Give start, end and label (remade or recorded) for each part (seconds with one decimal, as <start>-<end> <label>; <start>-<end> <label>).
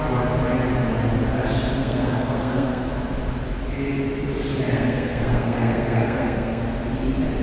0.0-1.8 recorded; 1.8-2.9 remade; 2.9-4.7 recorded; 4.7-6.6 remade; 6.6-7.4 recorded